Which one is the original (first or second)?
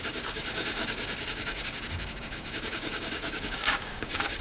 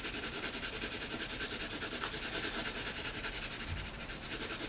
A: second